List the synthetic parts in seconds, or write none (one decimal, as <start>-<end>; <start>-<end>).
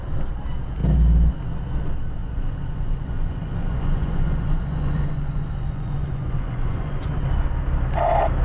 2.2-7.1